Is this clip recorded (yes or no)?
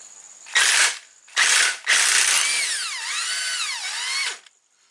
yes